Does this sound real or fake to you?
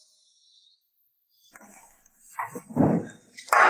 real